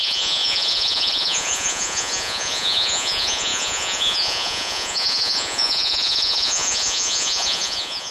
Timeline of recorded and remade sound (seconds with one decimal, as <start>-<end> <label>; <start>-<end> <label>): 0.0-8.1 remade